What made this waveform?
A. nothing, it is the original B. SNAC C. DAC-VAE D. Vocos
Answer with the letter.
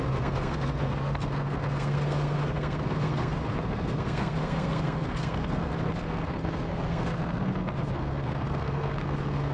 B